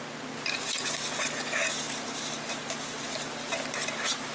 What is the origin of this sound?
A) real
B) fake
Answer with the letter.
A